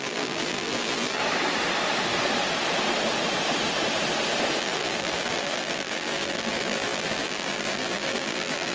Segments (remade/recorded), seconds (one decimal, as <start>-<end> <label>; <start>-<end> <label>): 0.0-1.2 remade; 1.2-4.6 recorded; 4.6-8.7 remade